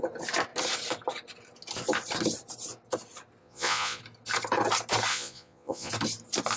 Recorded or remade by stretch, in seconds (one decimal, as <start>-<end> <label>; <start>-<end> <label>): 0.0-3.4 recorded; 3.4-4.0 remade; 4.0-5.1 recorded; 5.1-5.9 remade; 5.9-6.6 recorded